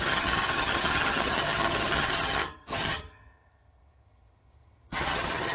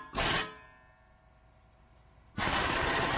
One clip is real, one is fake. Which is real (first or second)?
second